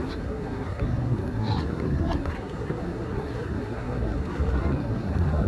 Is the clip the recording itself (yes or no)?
no